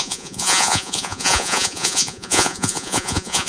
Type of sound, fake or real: fake